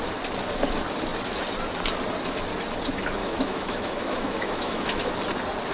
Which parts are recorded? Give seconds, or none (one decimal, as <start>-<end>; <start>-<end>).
0.0-3.2; 5.1-5.7